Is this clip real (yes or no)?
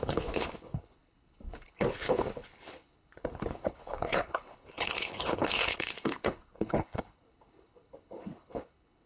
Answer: no